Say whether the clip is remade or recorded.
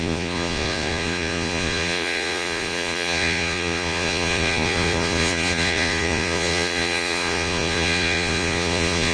remade